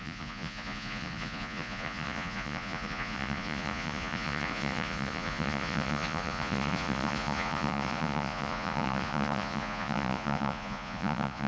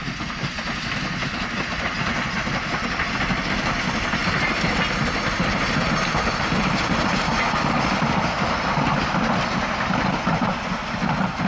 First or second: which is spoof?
first